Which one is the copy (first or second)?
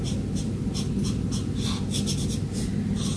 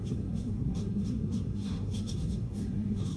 second